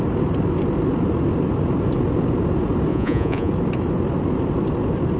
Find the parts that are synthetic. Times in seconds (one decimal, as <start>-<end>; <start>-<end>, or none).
2.9-3.5